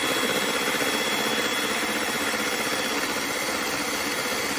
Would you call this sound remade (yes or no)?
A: no